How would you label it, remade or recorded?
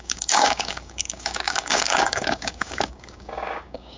remade